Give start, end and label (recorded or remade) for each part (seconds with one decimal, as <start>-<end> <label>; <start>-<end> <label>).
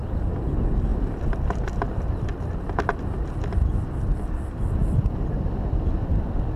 0.0-0.9 recorded; 0.9-2.5 remade; 2.5-6.6 recorded